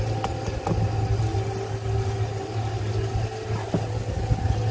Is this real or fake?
real